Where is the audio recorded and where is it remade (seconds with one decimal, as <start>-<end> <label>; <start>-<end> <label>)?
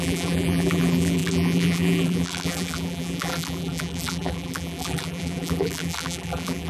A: 0.0-6.7 remade